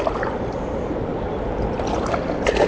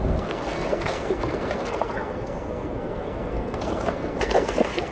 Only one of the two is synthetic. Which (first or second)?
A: second